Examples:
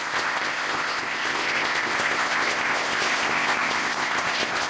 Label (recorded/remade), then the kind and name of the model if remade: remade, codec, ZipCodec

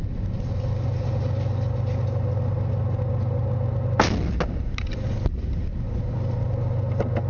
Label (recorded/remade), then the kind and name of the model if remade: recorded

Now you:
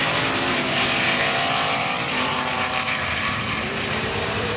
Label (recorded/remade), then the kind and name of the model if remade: remade, vocoder, BigVGAN v2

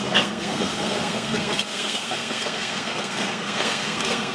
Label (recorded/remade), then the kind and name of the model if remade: remade, codec, SNAC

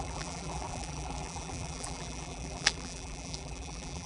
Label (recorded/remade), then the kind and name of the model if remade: remade, vocoder, BigVGAN v2